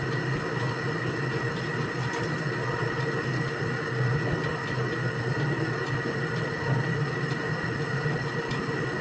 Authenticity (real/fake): real